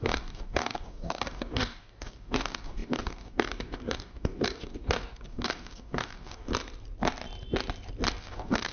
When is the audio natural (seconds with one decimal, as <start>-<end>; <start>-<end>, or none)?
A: 6.5-8.2